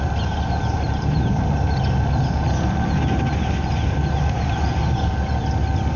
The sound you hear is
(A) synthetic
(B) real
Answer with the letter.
B